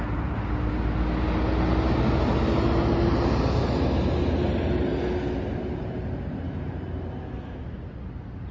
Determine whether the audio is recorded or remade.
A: recorded